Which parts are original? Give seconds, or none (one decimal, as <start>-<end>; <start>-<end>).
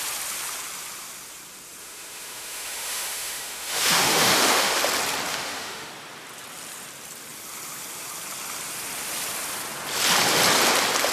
0.0-1.8; 4.8-5.3; 5.9-11.1